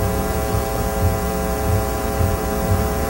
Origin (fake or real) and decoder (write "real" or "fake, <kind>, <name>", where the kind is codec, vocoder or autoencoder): fake, vocoder, Vocos